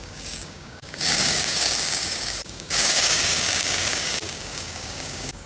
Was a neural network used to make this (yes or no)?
yes